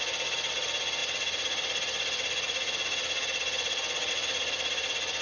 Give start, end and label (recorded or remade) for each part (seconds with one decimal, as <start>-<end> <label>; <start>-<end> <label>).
0.0-5.2 recorded